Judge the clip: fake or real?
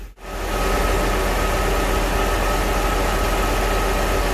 real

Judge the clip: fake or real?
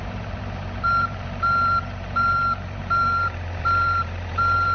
fake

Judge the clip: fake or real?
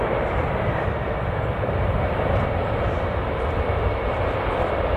fake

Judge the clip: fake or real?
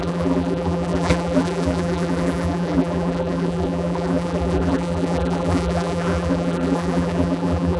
fake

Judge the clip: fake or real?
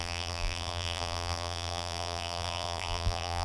fake